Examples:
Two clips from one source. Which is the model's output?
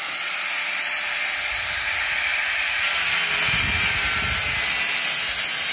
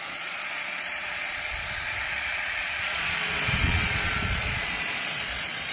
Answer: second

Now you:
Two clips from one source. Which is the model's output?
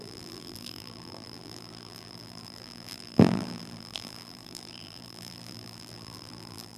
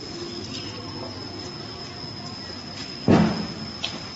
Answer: first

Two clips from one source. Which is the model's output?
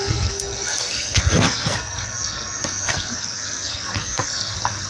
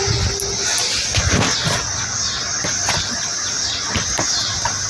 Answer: first